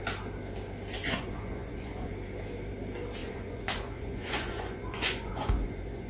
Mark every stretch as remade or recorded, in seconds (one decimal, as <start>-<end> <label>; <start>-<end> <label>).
0.0-1.0 recorded; 1.0-2.1 remade; 2.1-3.2 recorded; 3.2-6.1 remade

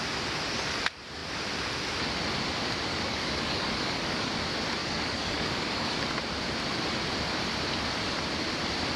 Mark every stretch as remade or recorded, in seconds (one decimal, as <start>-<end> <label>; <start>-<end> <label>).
0.0-2.9 recorded; 2.9-4.3 remade; 4.3-4.8 recorded; 4.8-6.0 remade; 6.0-9.0 recorded

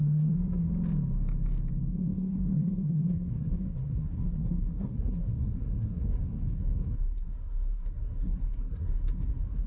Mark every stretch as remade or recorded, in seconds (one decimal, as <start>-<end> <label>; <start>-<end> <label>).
0.0-0.7 remade; 0.7-1.9 recorded; 1.9-9.7 remade